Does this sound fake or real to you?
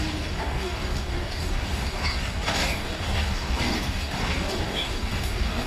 fake